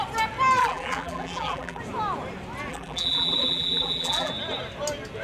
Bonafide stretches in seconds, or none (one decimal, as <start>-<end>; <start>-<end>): 0.0-0.6; 1.8-2.7; 4.3-5.2